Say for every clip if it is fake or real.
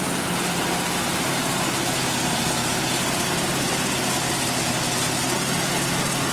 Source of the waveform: real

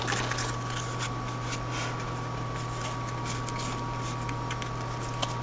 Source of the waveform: real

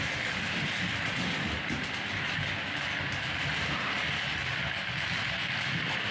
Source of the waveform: real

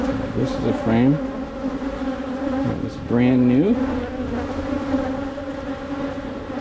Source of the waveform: real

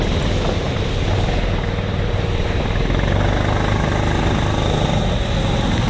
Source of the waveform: real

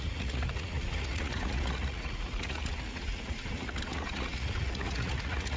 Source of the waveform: fake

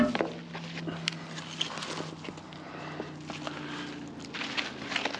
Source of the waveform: real